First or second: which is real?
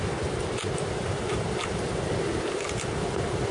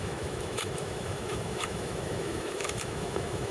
first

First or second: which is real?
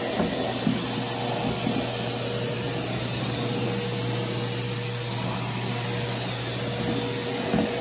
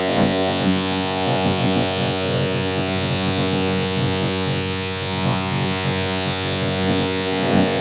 first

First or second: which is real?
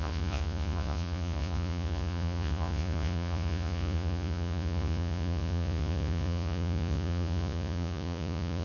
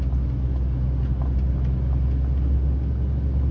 second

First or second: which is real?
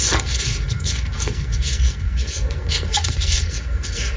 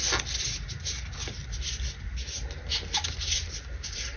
second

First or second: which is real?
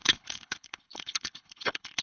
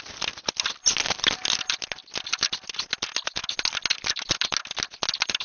second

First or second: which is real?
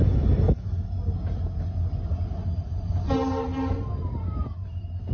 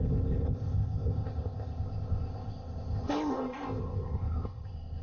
first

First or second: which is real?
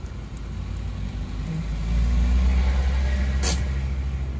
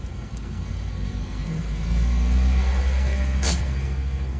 first